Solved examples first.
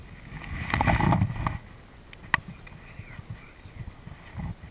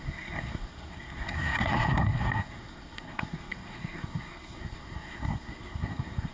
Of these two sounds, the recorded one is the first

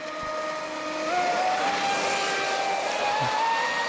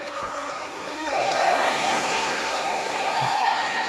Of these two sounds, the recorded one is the first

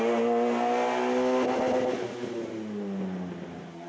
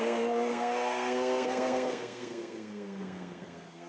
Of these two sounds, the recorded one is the first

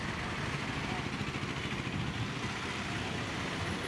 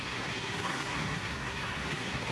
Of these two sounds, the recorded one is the first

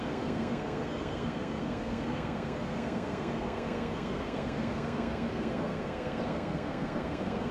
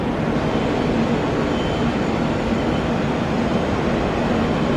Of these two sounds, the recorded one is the second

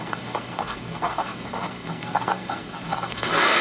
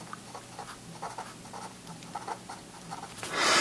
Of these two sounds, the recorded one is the second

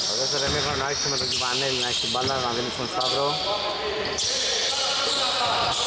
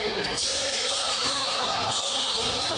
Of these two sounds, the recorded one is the first